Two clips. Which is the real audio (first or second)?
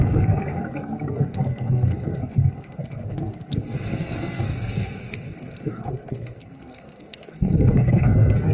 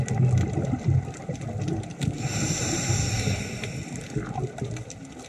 second